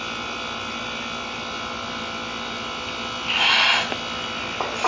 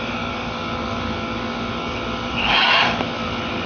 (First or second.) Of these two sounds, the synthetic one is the second